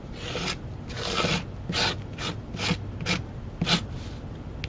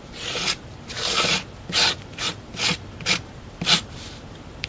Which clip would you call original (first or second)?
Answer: first